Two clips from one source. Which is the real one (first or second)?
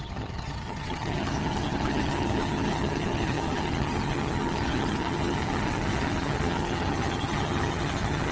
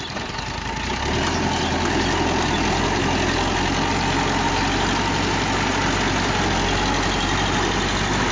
second